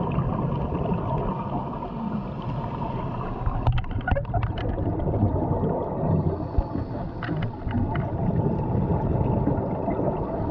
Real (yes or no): yes